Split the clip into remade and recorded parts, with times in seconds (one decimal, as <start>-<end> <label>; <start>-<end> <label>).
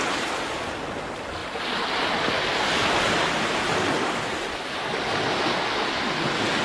0.0-6.6 recorded